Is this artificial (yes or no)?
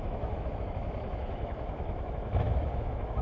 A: yes